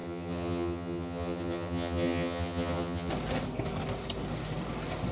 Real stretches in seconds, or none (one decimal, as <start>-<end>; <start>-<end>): 3.1-5.1